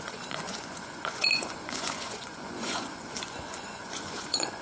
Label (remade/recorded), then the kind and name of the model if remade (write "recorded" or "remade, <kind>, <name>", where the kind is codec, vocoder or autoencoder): remade, vocoder, Vocos